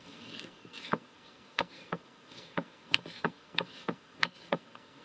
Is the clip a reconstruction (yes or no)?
yes